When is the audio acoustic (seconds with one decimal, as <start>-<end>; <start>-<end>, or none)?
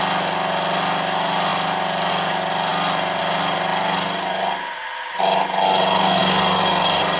0.0-7.2